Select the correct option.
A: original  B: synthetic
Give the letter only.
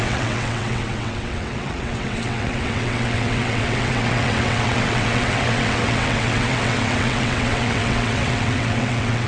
B